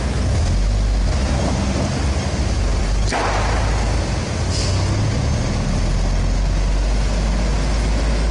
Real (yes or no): yes